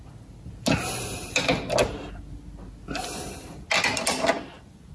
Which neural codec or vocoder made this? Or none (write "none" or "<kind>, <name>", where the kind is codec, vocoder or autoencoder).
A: none